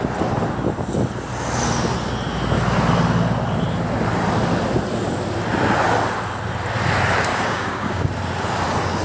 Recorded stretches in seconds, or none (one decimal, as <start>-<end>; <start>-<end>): 0.0-7.3; 8.1-9.0